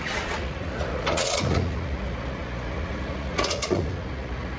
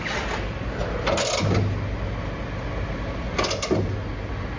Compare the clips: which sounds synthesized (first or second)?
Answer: first